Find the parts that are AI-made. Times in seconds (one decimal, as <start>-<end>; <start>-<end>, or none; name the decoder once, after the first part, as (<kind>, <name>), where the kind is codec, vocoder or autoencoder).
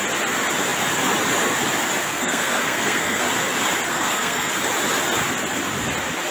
2.0-3.2 (codec, SNAC); 3.9-4.5